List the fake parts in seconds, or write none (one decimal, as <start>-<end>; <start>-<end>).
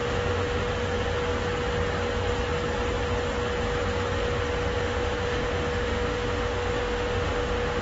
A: 0.0-0.7; 4.8-7.8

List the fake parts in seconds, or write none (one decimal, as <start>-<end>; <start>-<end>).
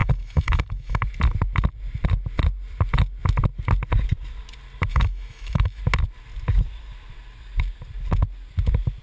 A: 0.0-1.0; 4.9-5.8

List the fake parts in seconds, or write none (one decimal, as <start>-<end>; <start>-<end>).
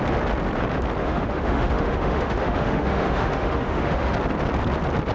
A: 1.0-4.1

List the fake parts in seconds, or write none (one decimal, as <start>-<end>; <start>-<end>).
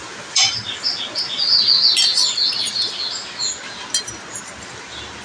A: none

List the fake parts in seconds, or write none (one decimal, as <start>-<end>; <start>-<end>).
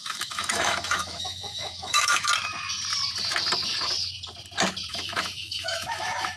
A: 0.0-2.3; 4.9-6.4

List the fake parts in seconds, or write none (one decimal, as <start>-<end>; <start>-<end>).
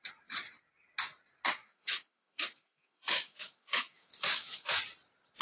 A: 1.6-4.8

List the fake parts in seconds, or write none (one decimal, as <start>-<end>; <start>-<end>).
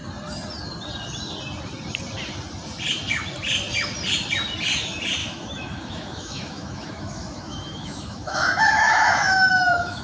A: 5.2-10.0